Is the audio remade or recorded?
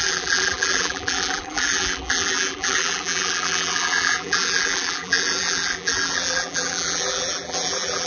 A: remade